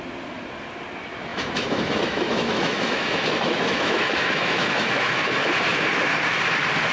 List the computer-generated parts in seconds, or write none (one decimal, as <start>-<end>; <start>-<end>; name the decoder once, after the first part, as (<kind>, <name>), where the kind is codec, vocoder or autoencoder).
1.3-5.3 (autoencoder, DAC-VAE)